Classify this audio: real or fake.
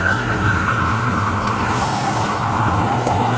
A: fake